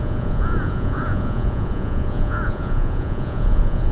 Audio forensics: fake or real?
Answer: fake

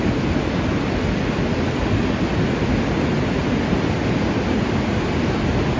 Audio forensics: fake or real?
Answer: real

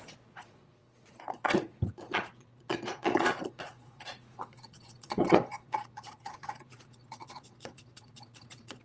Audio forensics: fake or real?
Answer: fake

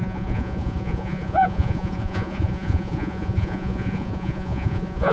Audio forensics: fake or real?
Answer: fake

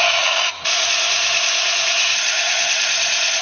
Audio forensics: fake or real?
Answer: fake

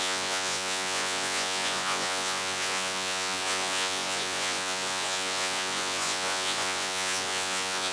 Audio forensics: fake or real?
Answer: fake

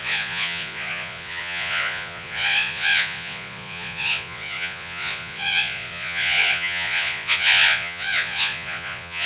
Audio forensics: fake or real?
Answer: fake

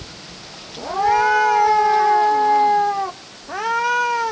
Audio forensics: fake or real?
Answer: real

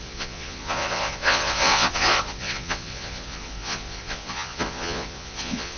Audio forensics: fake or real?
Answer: fake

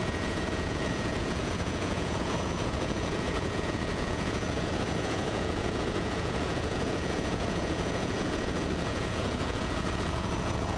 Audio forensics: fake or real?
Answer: fake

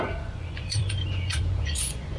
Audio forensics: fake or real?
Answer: fake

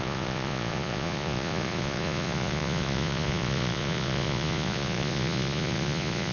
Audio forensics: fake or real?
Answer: fake